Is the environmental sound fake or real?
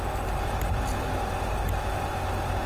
real